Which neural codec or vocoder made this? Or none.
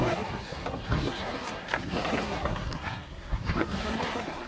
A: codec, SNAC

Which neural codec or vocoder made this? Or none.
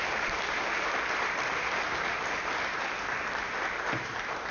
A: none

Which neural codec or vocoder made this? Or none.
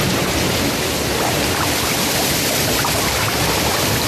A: none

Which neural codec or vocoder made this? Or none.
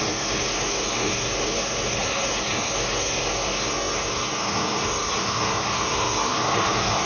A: codec, SNAC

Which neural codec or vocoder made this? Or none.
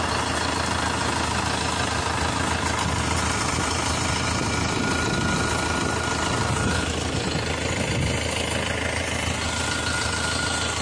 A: none